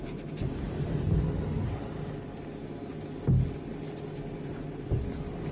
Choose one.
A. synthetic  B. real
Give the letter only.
B